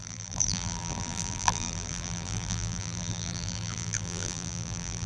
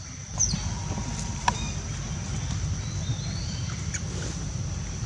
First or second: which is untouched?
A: second